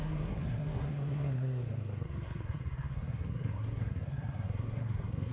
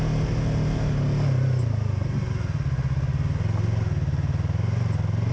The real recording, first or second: second